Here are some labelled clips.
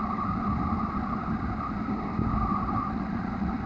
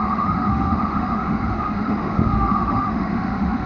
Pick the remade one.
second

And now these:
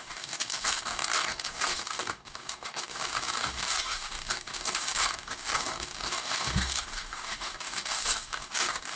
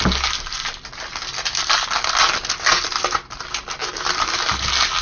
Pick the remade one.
first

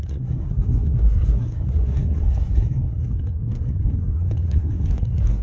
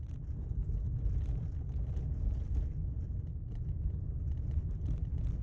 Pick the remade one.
first